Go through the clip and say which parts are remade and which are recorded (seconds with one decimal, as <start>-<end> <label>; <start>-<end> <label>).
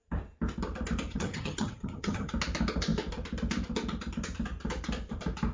0.0-1.1 recorded; 1.1-2.3 remade; 2.3-5.5 recorded